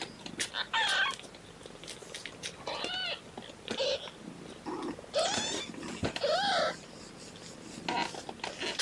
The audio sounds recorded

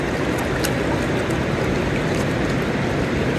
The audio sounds recorded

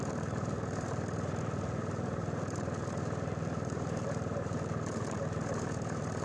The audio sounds remade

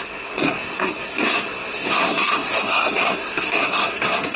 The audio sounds remade